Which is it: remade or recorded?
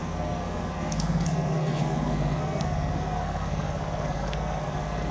remade